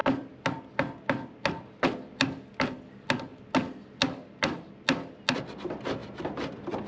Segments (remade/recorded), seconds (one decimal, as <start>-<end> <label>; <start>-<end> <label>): 0.0-6.9 recorded